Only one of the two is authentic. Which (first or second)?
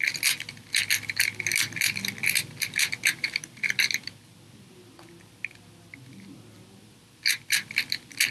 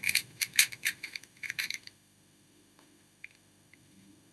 first